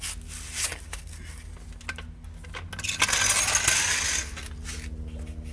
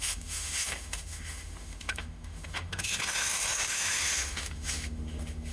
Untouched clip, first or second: first